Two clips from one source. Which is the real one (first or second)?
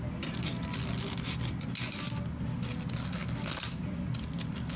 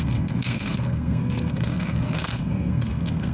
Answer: first